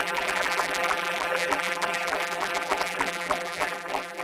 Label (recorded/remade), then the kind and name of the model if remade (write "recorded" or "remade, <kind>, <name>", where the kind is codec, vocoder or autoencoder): remade, vocoder, BigVGAN v2